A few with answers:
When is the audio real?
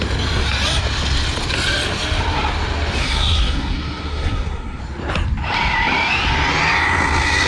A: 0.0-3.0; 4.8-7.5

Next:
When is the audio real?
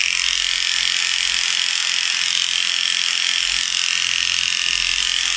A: 0.0-5.4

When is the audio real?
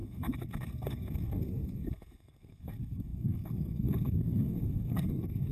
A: none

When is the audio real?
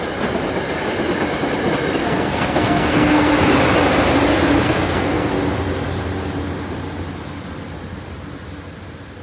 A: 0.0-2.0; 3.4-4.6; 5.3-9.2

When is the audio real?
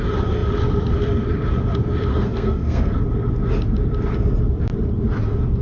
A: 0.0-2.1; 2.9-5.6